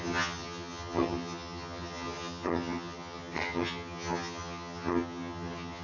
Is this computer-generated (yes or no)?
yes